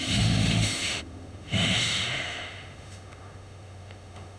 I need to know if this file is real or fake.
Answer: fake